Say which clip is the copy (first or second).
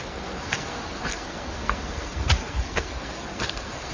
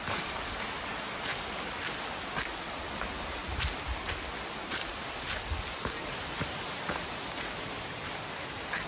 first